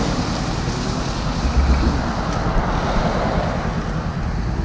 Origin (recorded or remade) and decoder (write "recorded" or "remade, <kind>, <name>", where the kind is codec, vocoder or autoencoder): recorded